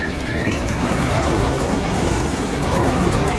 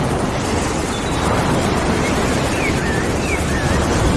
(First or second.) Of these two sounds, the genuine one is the second